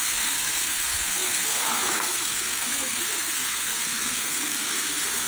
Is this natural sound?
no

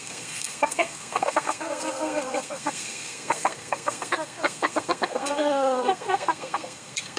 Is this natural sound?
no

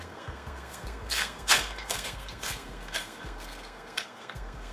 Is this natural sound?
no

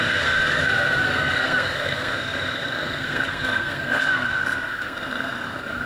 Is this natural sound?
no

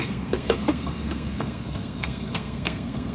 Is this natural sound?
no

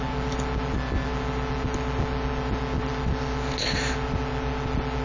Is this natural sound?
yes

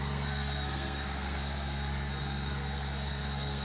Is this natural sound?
no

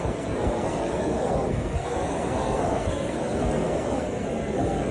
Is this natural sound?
no